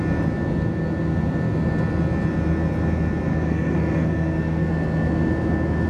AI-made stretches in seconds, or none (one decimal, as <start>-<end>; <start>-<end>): 3.3-4.7